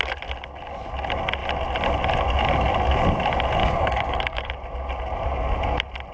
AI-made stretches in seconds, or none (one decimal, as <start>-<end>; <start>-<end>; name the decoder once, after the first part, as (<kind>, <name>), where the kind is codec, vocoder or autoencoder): 3.6-4.5 (codec, DAC)